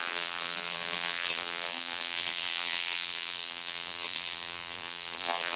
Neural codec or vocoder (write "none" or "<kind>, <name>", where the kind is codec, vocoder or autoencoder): vocoder, BigVGAN v2